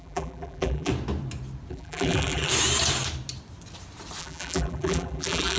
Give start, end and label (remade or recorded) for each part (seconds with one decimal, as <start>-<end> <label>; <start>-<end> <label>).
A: 0.0-0.9 remade; 0.9-1.7 recorded; 1.7-2.5 remade; 2.5-4.2 recorded; 4.2-5.6 remade